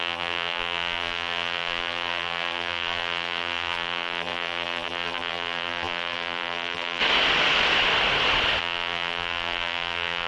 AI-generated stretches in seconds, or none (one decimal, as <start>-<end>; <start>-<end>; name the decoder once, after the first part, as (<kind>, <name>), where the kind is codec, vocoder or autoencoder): 0.0-7.0 (vocoder, BigVGAN v2); 8.6-10.3